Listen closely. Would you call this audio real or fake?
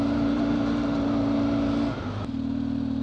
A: real